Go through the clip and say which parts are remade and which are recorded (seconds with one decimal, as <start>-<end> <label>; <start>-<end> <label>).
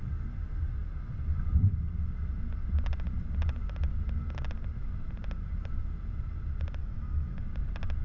0.0-6.8 recorded; 6.8-7.4 remade; 7.4-8.0 recorded